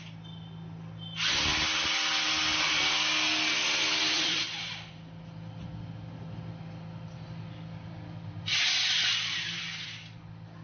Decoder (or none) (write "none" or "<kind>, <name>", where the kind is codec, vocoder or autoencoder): none